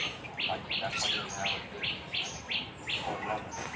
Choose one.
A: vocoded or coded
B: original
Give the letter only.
B